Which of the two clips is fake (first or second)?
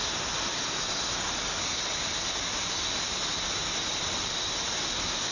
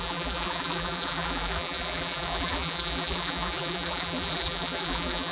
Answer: second